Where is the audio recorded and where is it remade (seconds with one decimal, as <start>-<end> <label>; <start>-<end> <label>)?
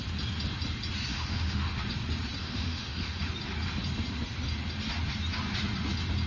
0.0-1.1 recorded; 1.1-1.7 remade; 1.7-2.4 recorded; 2.4-3.2 remade; 3.2-6.3 recorded